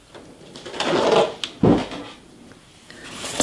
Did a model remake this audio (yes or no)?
no